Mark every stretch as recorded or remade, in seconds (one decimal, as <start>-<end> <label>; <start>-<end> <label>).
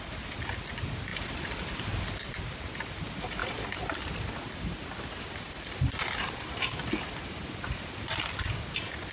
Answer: 0.0-1.1 recorded; 1.1-2.2 remade; 2.2-3.4 recorded; 3.4-5.9 remade; 5.9-9.1 recorded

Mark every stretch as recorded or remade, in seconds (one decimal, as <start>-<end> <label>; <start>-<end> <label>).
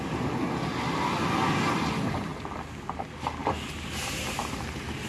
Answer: 0.0-5.1 recorded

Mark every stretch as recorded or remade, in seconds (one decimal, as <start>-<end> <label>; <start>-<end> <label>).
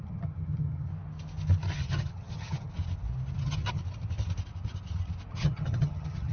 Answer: 0.0-0.9 remade; 0.9-1.8 recorded; 1.8-2.7 remade; 2.7-3.4 recorded; 3.4-3.8 remade; 3.8-5.3 recorded; 5.3-6.3 remade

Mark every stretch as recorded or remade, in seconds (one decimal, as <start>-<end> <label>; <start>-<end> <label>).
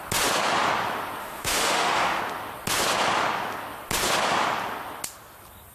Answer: 0.0-1.2 recorded; 1.2-2.2 remade; 2.2-5.7 recorded